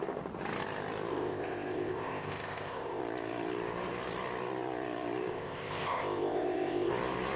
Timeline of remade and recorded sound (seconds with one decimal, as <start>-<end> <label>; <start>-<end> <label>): 0.0-1.1 recorded; 1.1-3.0 remade; 3.0-5.3 recorded; 5.3-6.9 remade; 6.9-7.4 recorded